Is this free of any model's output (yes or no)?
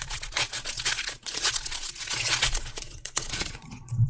no